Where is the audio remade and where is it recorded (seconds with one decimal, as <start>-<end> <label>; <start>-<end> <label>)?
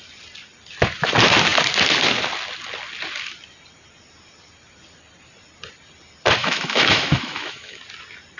0.0-6.4 recorded; 6.4-7.8 remade; 7.8-8.4 recorded